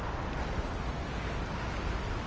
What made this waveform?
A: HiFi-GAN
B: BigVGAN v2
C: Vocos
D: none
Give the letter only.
D